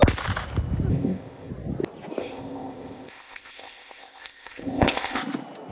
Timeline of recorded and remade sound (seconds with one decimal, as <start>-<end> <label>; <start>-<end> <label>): 0.0-0.9 recorded; 0.9-1.5 remade; 1.5-2.2 recorded; 2.2-5.2 remade; 5.2-5.7 recorded